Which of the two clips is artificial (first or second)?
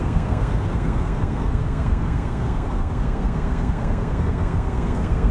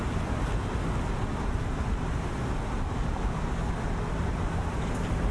first